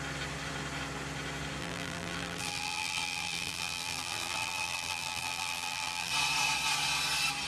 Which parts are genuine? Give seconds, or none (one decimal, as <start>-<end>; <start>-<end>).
0.0-1.6; 6.1-7.5